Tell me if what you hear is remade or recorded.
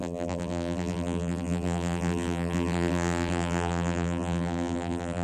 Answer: remade